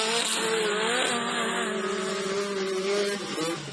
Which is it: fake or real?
real